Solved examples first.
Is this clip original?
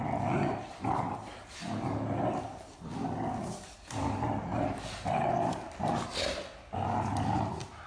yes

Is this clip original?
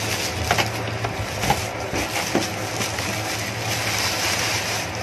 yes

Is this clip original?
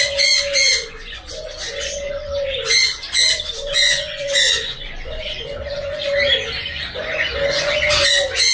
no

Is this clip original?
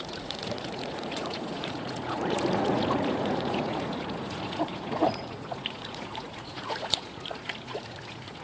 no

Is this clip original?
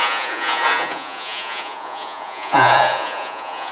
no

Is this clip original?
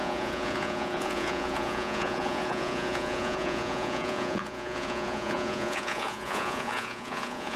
no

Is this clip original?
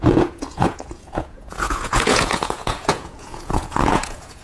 no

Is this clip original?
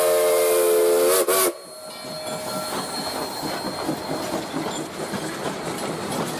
yes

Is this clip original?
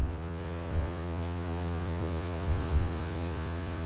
no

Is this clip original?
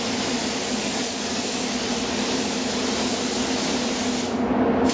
yes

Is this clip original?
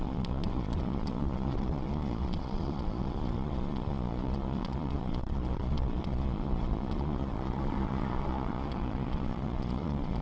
no